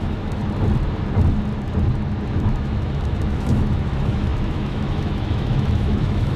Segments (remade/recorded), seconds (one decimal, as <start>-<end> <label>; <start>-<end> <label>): 0.0-0.4 remade; 0.4-2.3 recorded; 2.3-6.4 remade